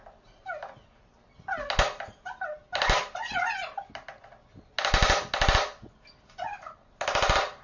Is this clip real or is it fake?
real